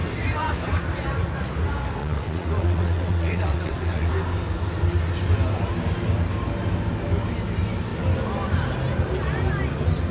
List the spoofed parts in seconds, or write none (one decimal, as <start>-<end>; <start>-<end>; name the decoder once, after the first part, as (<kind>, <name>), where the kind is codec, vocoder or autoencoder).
2.0-4.1 (vocoder, WaveNeXt)